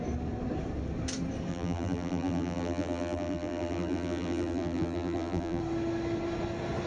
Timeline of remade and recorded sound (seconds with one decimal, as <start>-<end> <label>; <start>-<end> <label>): 0.0-1.5 recorded; 1.5-5.6 remade; 5.6-6.9 recorded